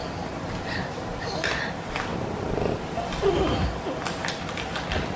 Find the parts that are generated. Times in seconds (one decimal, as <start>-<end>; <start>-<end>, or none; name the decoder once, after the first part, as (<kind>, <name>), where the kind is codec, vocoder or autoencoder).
none